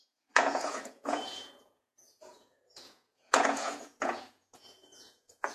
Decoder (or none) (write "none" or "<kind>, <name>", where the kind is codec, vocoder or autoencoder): vocoder, Vocos